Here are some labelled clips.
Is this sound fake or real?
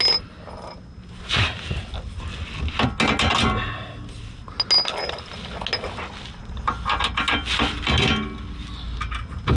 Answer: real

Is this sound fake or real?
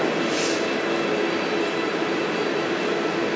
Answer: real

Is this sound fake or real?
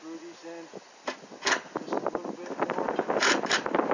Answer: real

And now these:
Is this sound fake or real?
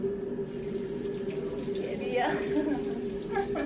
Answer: real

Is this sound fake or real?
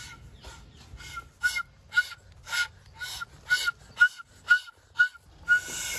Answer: real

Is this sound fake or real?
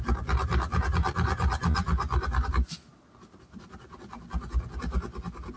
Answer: real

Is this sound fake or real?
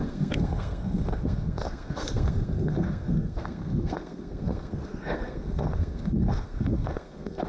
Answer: fake